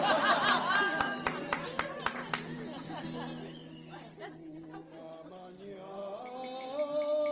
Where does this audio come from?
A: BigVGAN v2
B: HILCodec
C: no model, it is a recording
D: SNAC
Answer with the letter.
C